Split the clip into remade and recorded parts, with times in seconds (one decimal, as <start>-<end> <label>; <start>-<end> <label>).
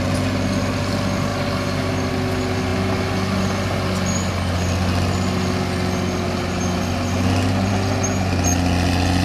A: 0.0-9.2 recorded